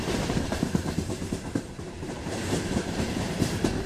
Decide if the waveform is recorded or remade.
remade